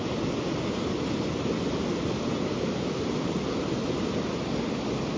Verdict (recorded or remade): recorded